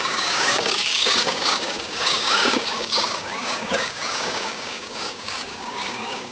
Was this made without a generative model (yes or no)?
no